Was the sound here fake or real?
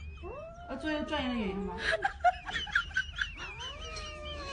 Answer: real